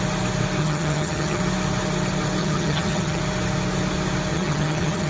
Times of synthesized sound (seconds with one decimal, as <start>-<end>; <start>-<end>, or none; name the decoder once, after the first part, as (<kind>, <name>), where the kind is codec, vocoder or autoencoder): 0.6-1.4 (vocoder, HiFi-GAN); 2.4-3.2; 4.3-5.1